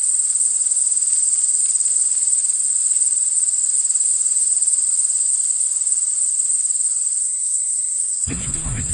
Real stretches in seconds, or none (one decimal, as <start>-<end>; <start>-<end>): 0.0-7.2